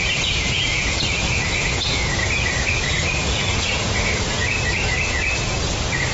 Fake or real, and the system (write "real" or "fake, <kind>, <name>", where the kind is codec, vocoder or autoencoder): fake, vocoder, Vocos